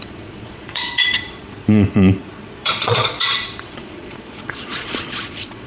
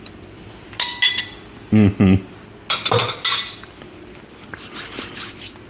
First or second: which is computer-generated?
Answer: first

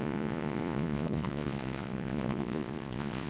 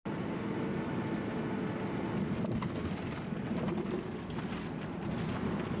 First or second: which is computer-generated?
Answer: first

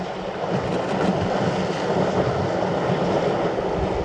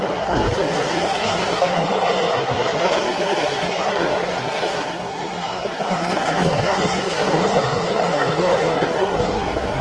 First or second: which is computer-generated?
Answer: second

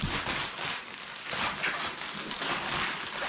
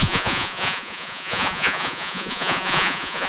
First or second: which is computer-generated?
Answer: second